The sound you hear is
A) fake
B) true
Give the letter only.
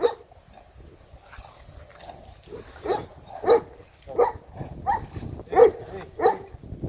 A